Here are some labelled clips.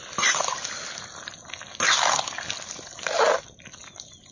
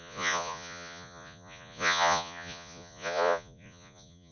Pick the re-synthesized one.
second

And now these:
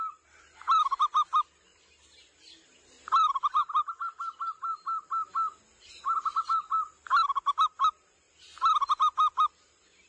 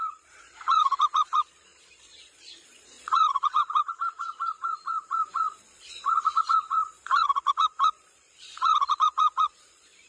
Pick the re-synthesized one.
second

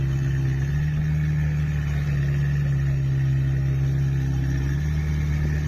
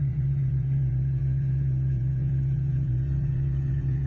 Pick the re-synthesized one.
second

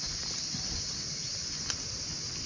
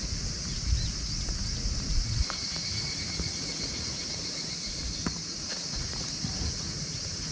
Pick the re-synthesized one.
second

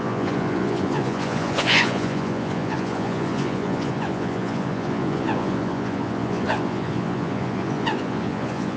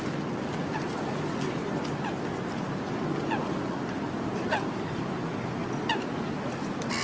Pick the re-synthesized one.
first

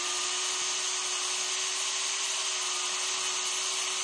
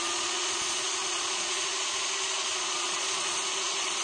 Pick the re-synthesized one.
second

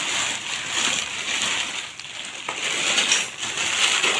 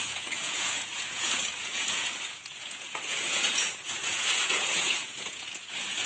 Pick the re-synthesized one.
second